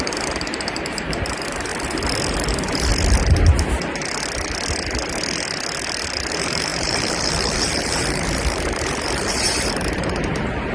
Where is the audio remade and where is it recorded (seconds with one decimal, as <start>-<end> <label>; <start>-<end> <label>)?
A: 0.0-1.7 remade; 1.7-2.5 recorded; 2.5-2.9 remade; 2.9-6.3 recorded; 6.3-10.7 remade